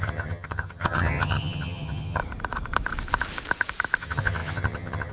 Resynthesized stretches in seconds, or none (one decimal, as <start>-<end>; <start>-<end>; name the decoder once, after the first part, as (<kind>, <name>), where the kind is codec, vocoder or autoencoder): 0.0-2.2 (vocoder, HiFi-GAN); 4.0-5.1